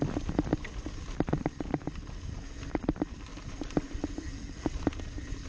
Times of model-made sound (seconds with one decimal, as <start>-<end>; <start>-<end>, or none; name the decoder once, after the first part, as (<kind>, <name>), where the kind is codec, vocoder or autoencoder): none